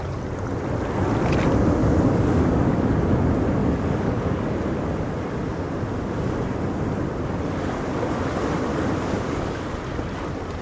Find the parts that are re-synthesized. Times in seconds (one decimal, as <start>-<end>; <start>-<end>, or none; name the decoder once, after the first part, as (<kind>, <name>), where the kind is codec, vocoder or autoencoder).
1.8-2.9 (codec, DAC); 3.6-4.5; 8.7-9.7